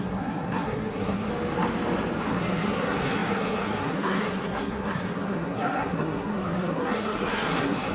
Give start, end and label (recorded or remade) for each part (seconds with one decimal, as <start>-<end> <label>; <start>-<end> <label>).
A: 0.0-1.3 remade; 1.3-2.3 recorded; 2.3-7.9 remade